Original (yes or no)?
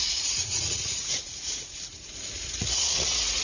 no